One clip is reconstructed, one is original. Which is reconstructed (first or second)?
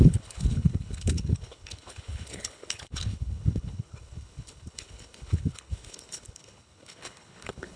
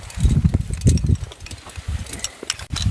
first